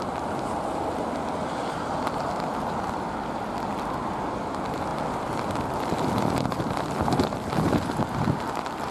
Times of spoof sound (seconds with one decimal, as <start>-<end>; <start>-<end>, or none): none